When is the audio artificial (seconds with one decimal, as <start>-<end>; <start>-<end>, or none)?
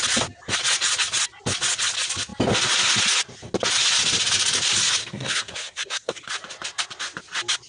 5.0-6.2